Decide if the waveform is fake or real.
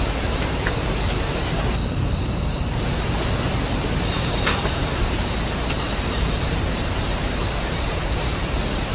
fake